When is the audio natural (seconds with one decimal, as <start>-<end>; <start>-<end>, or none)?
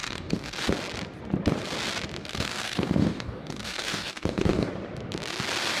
0.6-2.2; 4.7-5.8